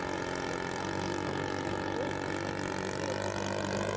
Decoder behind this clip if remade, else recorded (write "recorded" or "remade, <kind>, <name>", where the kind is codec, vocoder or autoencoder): recorded